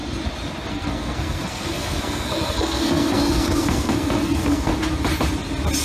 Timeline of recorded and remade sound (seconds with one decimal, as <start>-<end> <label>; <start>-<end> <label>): 0.0-0.7 recorded; 0.7-4.7 remade; 4.7-5.8 recorded